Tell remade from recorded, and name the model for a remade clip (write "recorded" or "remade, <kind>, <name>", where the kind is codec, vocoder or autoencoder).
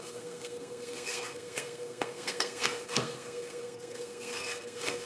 remade, codec, SNAC